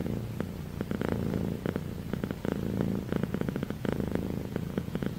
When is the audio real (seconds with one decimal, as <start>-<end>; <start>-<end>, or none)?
0.0-3.1